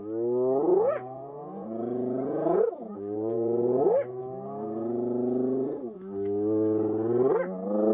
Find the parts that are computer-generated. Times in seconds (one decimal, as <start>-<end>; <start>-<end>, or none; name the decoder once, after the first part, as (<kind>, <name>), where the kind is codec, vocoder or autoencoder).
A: 0.7-3.8 (vocoder, Vocos)